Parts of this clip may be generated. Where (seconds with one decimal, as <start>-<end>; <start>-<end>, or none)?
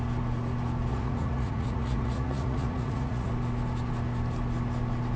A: 0.9-3.3